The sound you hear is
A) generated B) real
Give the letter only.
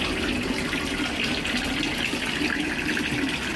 B